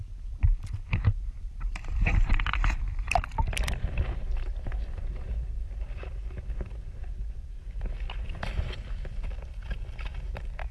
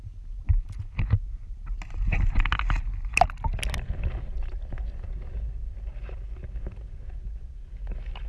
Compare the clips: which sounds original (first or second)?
second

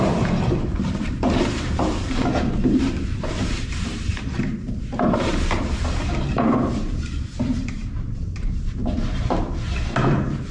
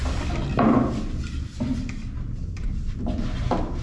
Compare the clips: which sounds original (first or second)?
second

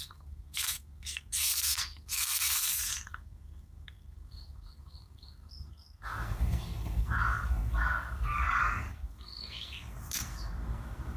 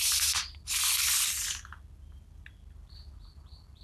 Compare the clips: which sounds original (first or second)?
second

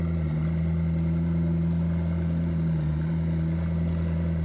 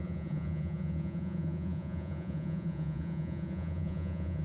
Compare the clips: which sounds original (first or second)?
first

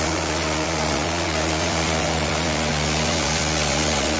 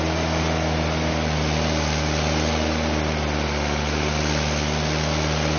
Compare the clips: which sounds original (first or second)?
second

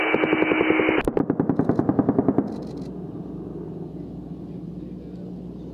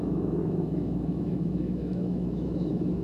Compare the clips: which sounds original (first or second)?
first